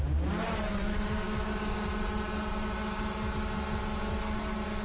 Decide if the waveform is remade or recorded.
recorded